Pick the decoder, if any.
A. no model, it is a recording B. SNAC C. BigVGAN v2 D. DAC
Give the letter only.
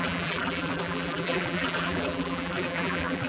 C